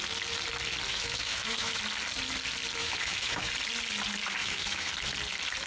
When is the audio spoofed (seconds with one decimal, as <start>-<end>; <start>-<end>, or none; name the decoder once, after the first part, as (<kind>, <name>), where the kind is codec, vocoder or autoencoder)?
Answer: 0.9-1.8 (autoencoder, DAC-VAE); 2.8-3.5; 4.4-4.9